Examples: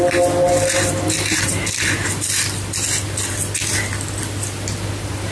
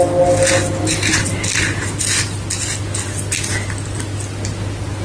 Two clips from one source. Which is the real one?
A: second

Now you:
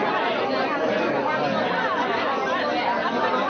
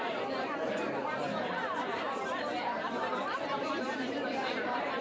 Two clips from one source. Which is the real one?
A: first